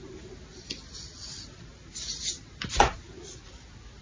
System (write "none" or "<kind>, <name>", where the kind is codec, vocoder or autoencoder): none